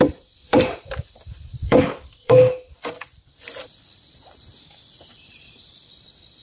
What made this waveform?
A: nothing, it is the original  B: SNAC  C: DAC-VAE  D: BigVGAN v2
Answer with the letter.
D